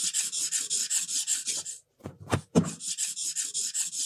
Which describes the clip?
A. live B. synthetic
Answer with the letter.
A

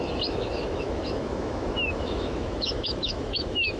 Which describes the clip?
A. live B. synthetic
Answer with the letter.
B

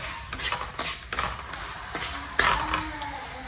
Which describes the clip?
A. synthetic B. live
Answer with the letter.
B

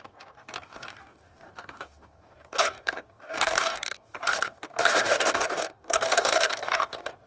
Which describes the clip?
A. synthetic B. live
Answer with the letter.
A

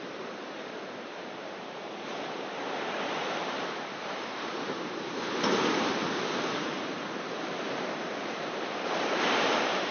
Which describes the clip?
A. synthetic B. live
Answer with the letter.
A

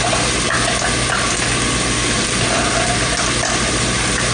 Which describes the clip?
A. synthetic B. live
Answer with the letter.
B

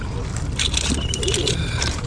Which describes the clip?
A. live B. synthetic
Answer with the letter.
A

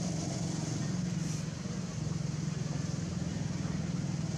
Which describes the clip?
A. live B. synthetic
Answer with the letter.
A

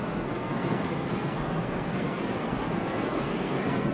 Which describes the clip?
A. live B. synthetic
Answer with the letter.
B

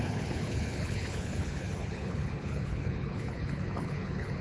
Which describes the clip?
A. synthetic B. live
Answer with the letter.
A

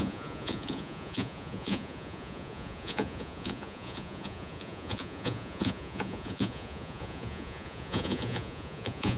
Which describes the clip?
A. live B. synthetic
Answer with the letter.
B